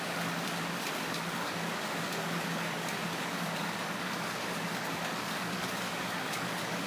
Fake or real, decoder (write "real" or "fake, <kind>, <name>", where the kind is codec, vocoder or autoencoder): fake, codec, DAC